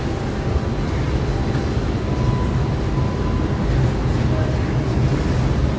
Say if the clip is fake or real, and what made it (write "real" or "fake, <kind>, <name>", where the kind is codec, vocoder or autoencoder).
real